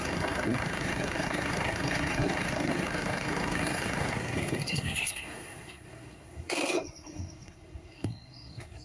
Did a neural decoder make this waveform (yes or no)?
yes